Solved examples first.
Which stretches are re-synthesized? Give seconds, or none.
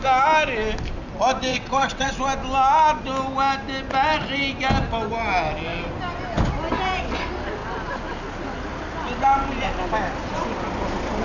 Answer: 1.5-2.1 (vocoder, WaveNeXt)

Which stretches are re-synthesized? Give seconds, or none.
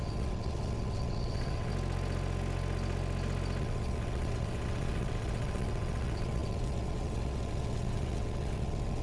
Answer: 0.0-1.7 (vocoder, WaveNeXt); 3.6-9.0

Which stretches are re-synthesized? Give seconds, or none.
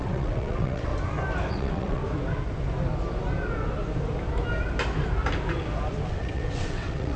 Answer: 0.0-0.9 (vocoder, WaveNeXt); 1.5-2.0; 6.1-7.2